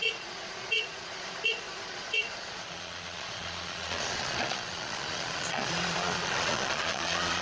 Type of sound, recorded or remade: remade